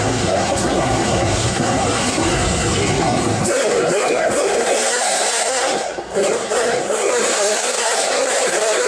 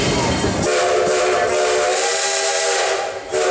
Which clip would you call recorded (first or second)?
second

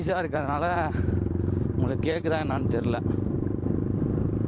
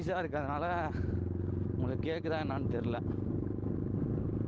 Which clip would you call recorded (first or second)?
second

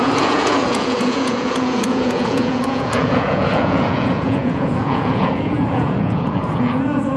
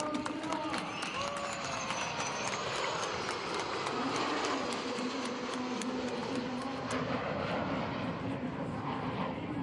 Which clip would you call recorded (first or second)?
second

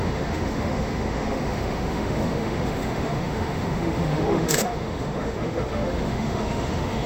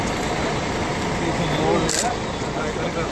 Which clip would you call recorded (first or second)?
second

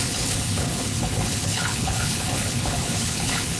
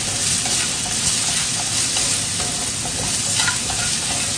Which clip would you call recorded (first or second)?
second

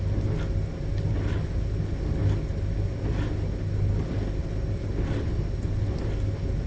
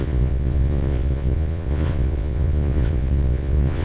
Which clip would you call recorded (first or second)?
first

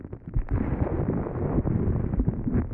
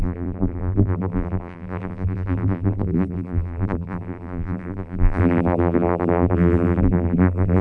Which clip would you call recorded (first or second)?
first